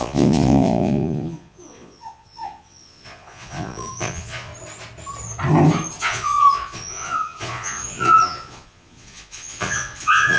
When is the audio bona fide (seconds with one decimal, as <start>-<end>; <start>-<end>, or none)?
4.5-6.0